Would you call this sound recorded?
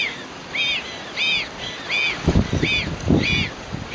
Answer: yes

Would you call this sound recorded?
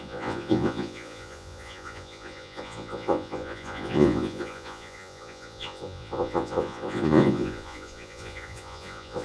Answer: no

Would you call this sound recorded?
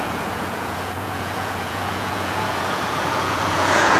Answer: no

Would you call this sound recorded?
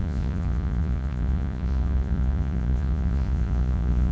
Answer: no